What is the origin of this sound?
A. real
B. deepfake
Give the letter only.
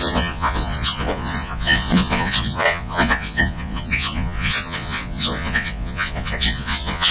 B